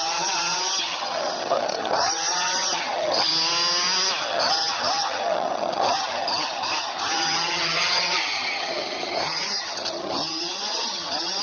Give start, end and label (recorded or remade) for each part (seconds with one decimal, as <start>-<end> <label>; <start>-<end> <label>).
0.0-3.3 remade; 3.3-4.2 recorded; 4.2-11.4 remade